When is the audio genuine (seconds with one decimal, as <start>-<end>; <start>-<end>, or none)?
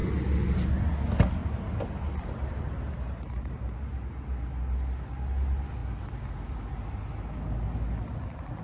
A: 0.0-8.6